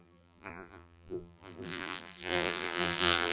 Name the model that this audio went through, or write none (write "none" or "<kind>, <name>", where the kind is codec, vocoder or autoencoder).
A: vocoder, BigVGAN v2